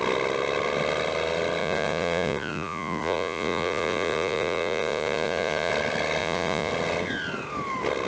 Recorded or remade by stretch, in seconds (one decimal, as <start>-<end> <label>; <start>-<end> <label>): 0.0-1.6 recorded; 1.6-5.7 remade; 5.7-6.2 recorded; 6.2-6.7 remade; 6.7-8.1 recorded